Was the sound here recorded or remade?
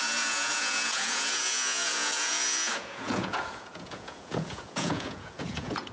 remade